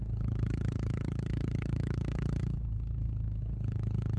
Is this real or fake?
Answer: fake